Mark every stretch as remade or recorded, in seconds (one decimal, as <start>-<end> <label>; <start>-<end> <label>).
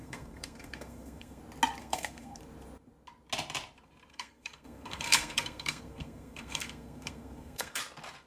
0.0-1.4 remade; 1.4-1.8 recorded; 1.8-2.4 remade; 2.4-4.1 recorded; 4.1-7.8 remade; 7.8-8.3 recorded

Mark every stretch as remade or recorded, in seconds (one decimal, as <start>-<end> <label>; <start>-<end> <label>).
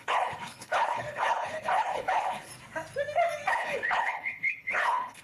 0.0-2.5 remade; 2.5-3.5 recorded; 3.5-5.2 remade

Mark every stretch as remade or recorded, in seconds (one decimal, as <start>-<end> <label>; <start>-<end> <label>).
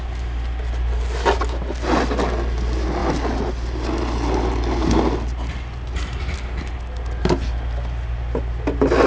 0.0-9.1 recorded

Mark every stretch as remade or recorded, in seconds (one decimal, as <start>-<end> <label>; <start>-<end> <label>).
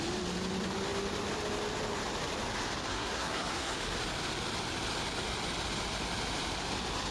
0.0-2.9 recorded; 2.9-3.8 remade; 3.8-7.1 recorded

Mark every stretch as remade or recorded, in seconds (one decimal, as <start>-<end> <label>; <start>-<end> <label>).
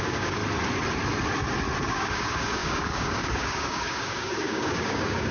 0.0-0.4 remade; 0.4-1.9 recorded; 1.9-5.3 remade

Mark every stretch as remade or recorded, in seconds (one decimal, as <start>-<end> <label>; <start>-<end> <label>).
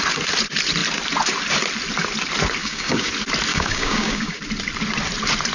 0.0-2.6 recorded; 2.6-3.1 remade; 3.1-3.5 recorded; 3.5-4.4 remade; 4.4-5.5 recorded